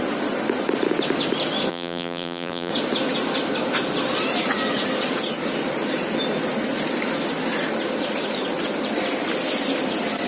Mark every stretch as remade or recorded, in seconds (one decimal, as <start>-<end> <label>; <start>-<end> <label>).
0.0-1.7 recorded; 1.7-2.7 remade; 2.7-10.3 recorded